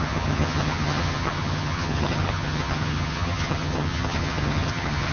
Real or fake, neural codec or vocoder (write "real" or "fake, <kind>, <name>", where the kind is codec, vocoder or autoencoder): fake, vocoder, HiFi-GAN